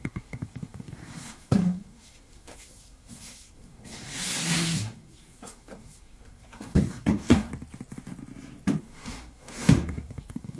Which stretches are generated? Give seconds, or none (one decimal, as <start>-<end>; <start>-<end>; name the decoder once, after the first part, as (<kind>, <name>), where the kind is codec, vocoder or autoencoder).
0.0-7.5 (codec, SNAC); 8.8-10.6